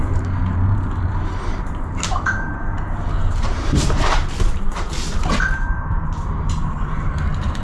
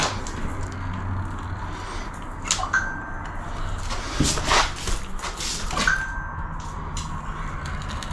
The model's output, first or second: first